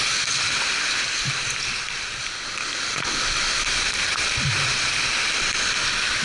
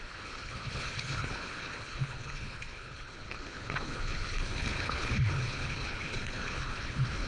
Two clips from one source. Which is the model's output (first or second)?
second